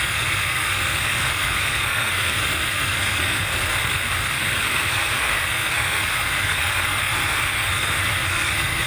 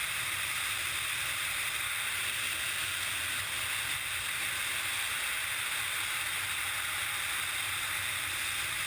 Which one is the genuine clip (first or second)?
second